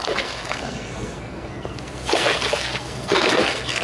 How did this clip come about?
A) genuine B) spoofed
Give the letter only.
B